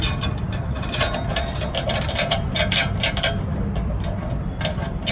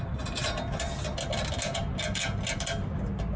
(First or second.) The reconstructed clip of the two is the first